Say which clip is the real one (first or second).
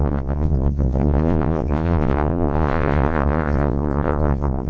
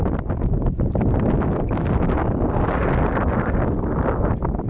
second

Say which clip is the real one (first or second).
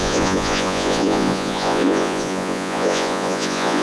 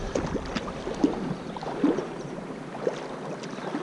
second